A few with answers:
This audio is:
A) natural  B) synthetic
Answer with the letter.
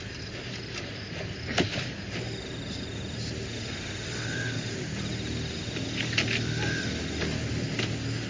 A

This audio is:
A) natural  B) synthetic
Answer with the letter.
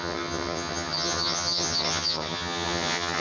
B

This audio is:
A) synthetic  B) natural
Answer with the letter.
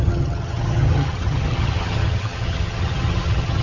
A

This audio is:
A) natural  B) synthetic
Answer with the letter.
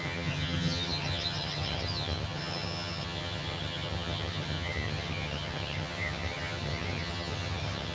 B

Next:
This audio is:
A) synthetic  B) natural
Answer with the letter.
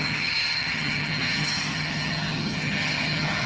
A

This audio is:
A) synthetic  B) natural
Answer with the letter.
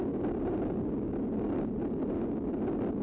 B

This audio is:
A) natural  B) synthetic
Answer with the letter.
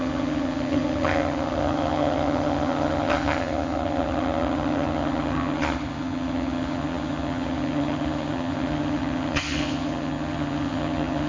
B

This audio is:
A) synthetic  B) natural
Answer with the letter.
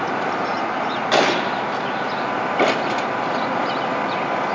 B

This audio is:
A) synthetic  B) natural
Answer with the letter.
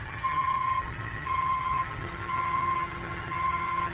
A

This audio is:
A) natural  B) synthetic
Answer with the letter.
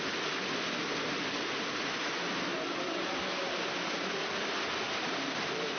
A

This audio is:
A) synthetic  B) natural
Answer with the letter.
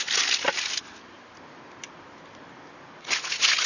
B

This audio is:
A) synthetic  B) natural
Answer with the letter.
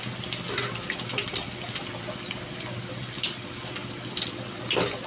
B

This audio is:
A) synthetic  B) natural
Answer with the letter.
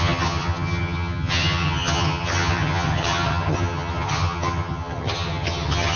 A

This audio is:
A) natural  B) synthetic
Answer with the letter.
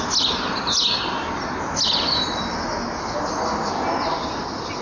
A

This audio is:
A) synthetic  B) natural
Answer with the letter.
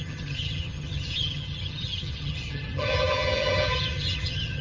A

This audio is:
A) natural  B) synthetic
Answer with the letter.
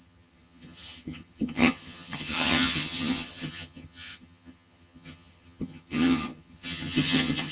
B